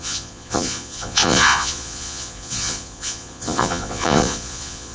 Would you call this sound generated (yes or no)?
yes